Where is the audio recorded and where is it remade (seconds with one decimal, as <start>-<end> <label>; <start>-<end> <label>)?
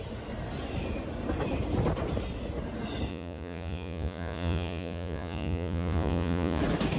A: 0.0-3.1 recorded; 3.1-6.6 remade; 6.6-7.0 recorded